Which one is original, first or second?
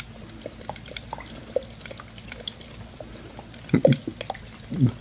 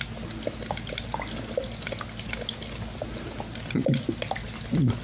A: second